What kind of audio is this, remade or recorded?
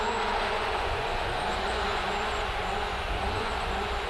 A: remade